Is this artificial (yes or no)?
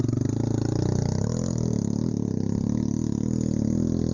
no